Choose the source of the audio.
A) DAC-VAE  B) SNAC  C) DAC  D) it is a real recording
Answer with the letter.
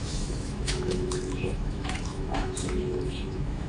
A